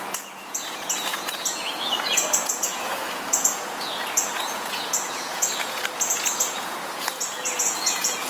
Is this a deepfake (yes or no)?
yes